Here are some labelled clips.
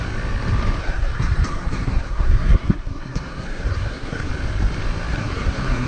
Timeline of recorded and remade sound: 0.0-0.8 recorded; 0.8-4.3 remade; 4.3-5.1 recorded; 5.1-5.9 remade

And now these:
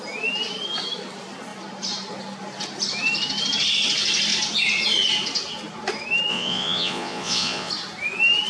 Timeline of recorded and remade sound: 0.0-6.3 recorded; 6.3-7.7 remade; 7.7-8.5 recorded